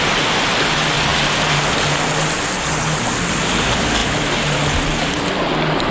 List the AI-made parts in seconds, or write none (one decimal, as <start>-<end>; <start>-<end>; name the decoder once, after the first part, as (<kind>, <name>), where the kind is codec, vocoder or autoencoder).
none